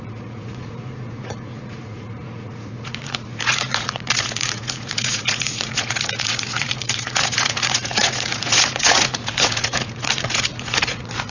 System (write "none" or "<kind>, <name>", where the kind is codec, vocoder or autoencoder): vocoder, Vocos